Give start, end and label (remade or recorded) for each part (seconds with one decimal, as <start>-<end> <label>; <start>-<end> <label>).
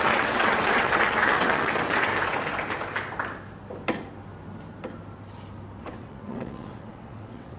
0.0-2.1 remade; 2.1-5.8 recorded; 5.8-7.6 remade